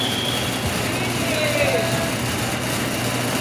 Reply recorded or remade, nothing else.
recorded